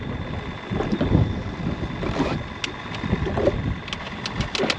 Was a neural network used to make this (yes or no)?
no